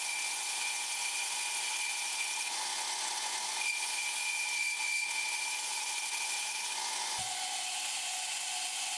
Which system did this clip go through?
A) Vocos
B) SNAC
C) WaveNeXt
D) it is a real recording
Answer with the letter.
A